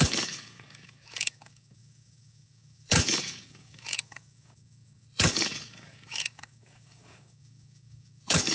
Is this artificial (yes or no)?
yes